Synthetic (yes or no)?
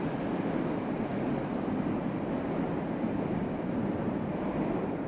no